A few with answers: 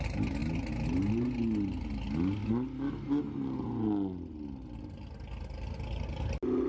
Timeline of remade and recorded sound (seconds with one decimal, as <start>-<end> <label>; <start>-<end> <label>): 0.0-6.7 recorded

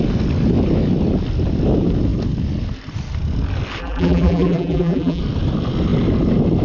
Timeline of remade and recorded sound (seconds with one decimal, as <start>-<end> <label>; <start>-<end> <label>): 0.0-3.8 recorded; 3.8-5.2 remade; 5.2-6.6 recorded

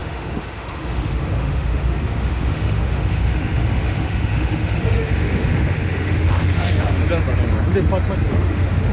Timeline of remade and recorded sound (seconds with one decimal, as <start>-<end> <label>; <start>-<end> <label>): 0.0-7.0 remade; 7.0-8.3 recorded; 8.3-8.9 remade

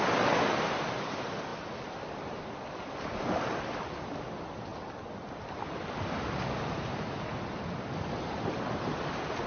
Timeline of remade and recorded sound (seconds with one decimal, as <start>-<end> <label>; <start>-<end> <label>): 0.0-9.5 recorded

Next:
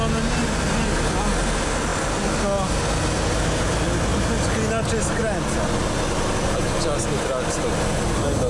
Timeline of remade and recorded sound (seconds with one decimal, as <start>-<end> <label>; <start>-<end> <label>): 0.0-8.5 recorded

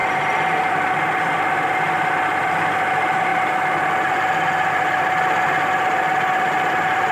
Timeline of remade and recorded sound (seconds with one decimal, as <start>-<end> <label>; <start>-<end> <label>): 0.0-7.1 recorded